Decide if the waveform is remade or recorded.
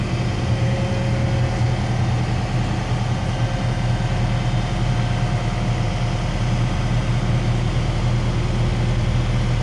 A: recorded